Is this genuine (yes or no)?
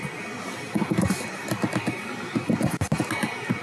yes